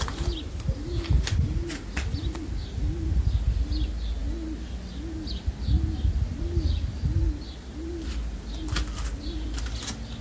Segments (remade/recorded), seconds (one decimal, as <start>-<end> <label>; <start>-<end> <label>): 0.0-10.2 recorded